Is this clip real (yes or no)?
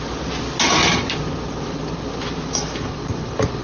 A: yes